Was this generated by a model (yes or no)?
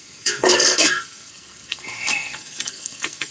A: yes